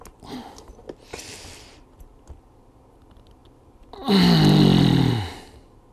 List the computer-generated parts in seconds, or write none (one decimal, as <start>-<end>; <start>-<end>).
none